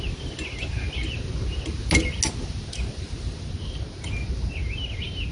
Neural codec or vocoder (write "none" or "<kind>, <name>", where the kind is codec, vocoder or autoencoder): none